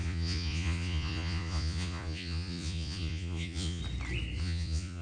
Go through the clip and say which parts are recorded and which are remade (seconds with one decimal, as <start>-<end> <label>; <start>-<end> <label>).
0.0-3.8 remade; 3.8-4.4 recorded; 4.4-5.0 remade